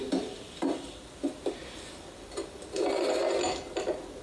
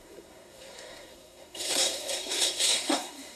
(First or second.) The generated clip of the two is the second